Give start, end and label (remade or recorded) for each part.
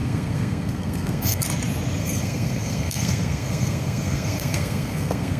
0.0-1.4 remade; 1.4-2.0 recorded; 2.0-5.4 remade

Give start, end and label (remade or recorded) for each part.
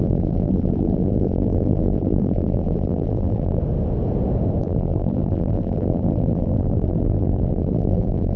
0.0-3.6 remade; 3.6-4.6 recorded; 4.6-8.4 remade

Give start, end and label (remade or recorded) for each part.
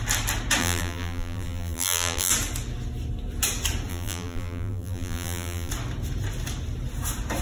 0.0-0.6 recorded; 0.6-2.3 remade; 2.3-3.9 recorded; 3.9-5.7 remade; 5.7-7.4 recorded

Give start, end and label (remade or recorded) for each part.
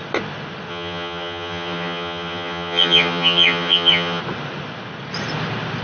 0.0-0.7 recorded; 0.7-4.2 remade; 4.2-5.8 recorded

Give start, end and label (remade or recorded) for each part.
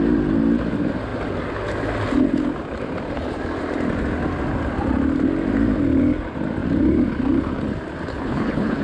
0.0-8.1 recorded; 8.1-8.8 remade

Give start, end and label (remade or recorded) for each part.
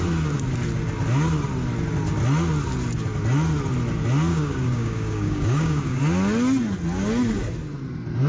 0.0-4.3 recorded; 4.3-6.0 remade; 6.0-8.3 recorded